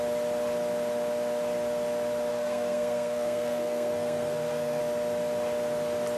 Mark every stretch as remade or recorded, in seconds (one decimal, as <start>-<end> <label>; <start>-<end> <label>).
0.0-2.3 recorded; 2.3-4.8 remade; 4.8-6.2 recorded